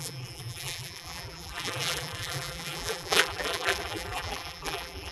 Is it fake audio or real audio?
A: fake